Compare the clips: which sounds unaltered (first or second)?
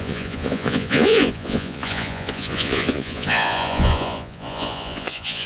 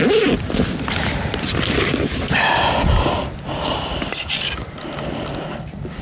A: second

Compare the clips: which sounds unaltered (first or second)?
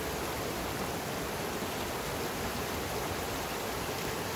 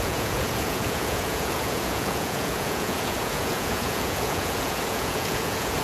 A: first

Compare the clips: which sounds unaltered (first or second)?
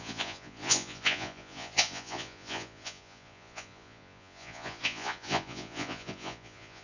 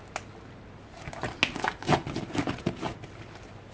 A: second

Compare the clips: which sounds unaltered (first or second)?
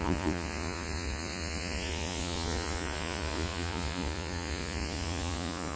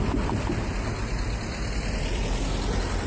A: second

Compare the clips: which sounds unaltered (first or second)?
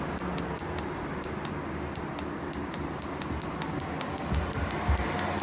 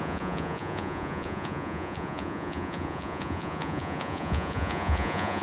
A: first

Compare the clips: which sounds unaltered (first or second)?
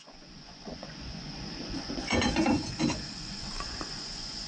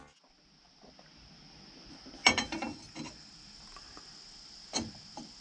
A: second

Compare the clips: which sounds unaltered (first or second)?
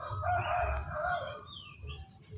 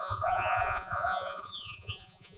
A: first